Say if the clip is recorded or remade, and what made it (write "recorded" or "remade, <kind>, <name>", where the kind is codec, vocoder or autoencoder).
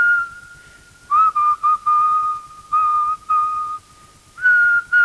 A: recorded